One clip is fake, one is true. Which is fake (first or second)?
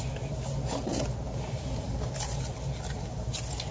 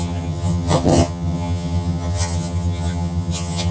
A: second